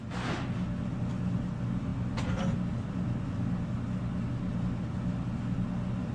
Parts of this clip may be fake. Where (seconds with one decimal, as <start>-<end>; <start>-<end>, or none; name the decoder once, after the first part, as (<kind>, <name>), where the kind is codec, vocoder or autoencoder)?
none

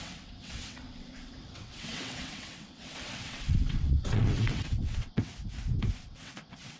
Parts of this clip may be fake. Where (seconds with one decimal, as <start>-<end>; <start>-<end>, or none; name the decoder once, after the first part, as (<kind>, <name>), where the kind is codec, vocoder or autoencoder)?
0.0-5.3 (vocoder, WaveNeXt); 6.0-6.8